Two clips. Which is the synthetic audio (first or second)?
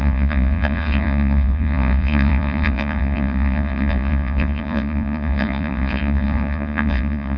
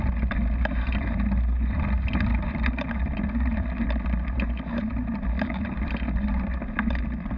first